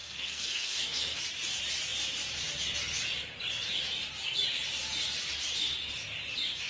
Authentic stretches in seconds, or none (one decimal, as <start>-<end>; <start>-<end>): 1.2-6.7